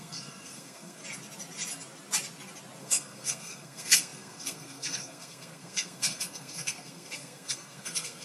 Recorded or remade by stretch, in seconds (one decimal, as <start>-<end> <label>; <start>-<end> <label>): 0.0-1.0 remade; 1.0-2.8 recorded; 2.8-8.2 remade